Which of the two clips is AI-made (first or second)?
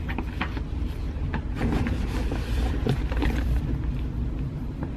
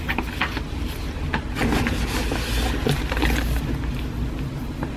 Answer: first